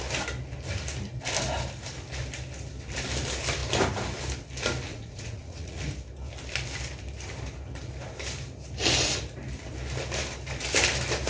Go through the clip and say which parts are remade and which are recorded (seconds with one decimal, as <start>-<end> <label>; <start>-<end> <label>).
0.0-4.9 recorded; 4.9-5.8 remade; 5.8-11.3 recorded